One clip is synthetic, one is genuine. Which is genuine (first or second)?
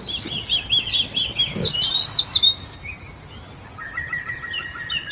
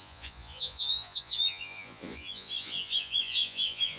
first